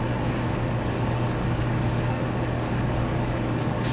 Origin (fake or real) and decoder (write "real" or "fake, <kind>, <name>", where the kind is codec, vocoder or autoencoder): fake, codec, DAC